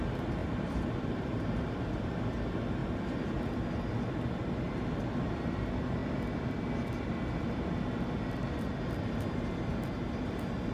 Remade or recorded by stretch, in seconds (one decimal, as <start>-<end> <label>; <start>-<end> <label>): 0.0-0.4 recorded; 0.4-1.8 remade; 1.8-2.8 recorded; 2.8-3.5 remade; 3.5-10.7 recorded